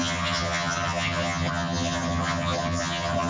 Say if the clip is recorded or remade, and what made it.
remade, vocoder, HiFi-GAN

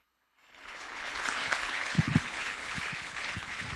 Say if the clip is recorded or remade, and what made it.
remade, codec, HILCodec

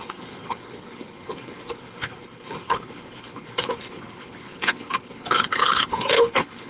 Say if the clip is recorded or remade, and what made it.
remade, codec, HILCodec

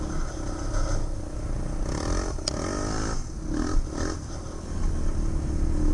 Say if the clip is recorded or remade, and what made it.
recorded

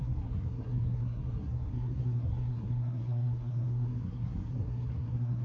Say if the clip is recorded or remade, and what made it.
remade, codec, SNAC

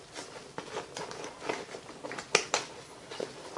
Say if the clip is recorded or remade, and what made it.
recorded